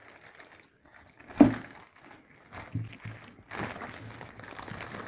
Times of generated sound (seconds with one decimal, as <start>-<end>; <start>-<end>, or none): none